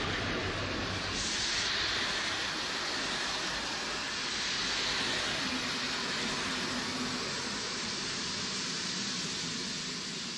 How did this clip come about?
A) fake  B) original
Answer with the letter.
B